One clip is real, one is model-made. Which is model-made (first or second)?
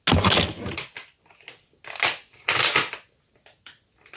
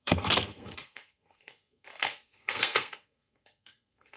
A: second